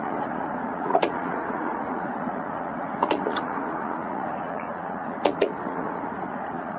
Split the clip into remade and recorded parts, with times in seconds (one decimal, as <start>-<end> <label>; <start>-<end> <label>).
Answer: 0.0-6.8 remade